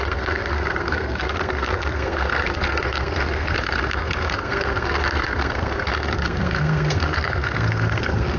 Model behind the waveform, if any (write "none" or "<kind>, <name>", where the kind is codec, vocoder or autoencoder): codec, SNAC